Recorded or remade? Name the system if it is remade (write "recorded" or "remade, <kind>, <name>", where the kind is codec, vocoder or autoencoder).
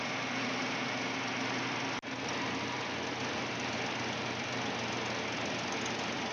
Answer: recorded